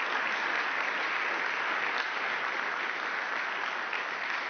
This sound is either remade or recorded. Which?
recorded